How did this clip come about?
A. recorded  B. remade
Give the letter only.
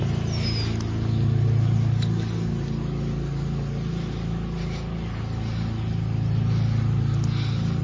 A